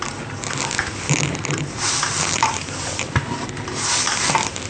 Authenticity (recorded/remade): recorded